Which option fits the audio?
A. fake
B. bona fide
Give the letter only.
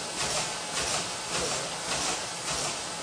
B